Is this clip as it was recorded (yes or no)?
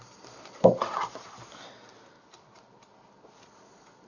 yes